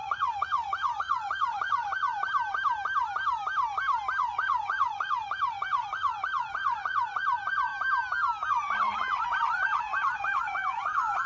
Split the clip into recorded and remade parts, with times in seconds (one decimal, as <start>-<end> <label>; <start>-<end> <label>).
0.0-2.3 remade; 2.3-4.2 recorded; 4.2-7.7 remade; 7.7-8.5 recorded; 8.5-11.3 remade